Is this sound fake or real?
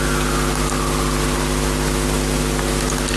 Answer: real